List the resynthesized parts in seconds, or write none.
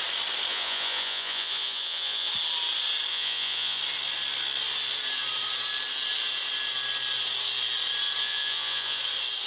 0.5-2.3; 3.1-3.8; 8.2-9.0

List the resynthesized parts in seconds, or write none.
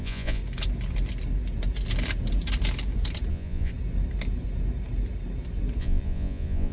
0.0-0.4; 3.3-3.7; 5.8-6.7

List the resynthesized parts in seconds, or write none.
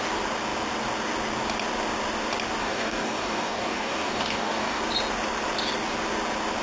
2.6-4.8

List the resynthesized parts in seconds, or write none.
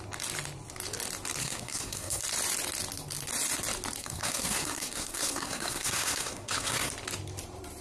1.4-2.2; 4.0-6.9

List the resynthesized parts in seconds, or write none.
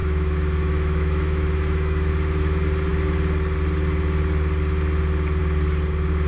0.0-2.1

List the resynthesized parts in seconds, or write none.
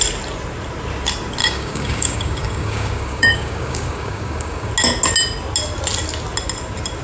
1.4-4.7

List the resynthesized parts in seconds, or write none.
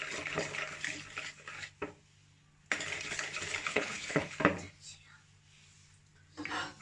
3.7-4.3